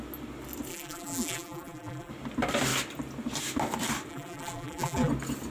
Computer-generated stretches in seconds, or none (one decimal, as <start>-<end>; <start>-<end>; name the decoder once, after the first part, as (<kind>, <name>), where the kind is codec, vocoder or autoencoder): 0.7-2.1 (vocoder, BigVGAN v2); 4.1-5.1